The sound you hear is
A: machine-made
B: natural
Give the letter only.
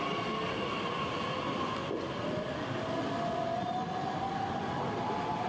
B